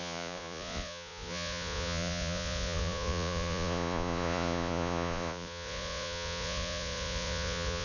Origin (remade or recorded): remade